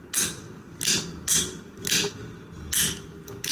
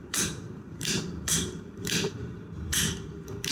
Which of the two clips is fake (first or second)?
second